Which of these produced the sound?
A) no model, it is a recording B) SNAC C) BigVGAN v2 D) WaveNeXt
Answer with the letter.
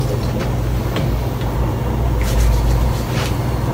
A